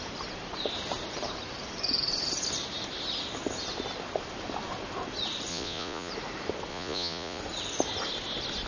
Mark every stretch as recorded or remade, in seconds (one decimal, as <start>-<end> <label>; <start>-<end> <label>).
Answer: 0.0-5.5 recorded; 5.5-6.1 remade; 6.1-6.7 recorded; 6.7-7.4 remade; 7.4-8.7 recorded